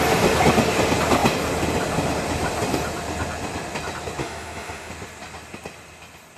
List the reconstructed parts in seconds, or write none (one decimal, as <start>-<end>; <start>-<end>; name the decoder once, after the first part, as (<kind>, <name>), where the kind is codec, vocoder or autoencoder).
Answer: 4.2-4.9 (autoencoder, DAC-VAE)